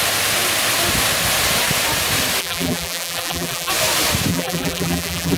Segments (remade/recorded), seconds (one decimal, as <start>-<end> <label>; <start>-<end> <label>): 0.0-2.4 recorded; 2.4-3.7 remade; 3.7-4.3 recorded; 4.3-5.4 remade